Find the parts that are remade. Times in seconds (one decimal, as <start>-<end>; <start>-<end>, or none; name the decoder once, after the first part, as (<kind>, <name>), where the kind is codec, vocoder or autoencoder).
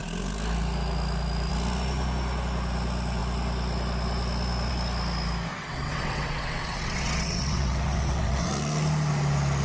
5.5-8.5 (vocoder, WaveNeXt)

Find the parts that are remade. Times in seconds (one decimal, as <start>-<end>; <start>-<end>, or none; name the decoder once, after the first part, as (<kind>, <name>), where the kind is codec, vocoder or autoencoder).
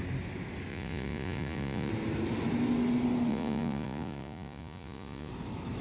0.7-1.9 (vocoder, Vocos); 3.3-5.3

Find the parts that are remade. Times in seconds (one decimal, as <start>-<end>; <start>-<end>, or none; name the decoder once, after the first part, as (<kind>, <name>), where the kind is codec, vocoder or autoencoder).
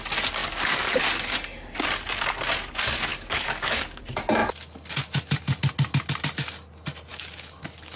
0.4-1.0 (codec, DAC); 3.1-4.0; 7.1-8.0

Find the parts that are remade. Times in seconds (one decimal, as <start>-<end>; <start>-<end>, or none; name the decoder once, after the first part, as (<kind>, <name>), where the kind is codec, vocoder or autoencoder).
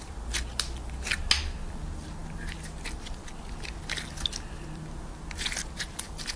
none